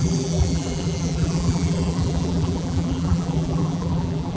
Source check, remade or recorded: remade